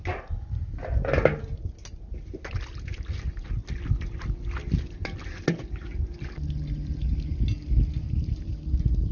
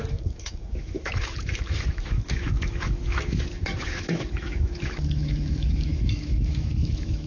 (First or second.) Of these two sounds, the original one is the first